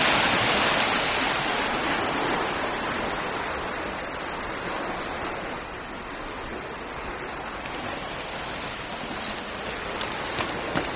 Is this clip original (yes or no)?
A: yes